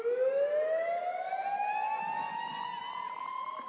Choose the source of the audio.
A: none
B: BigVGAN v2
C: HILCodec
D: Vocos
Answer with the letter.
A